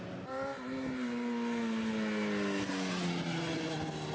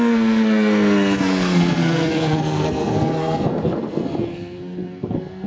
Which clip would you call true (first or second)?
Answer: first